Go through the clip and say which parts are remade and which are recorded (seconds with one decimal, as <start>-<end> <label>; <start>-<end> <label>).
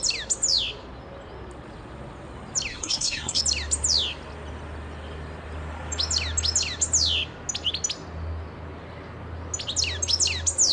0.0-2.7 recorded; 2.7-3.4 remade; 3.4-10.7 recorded